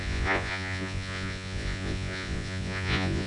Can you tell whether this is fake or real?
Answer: fake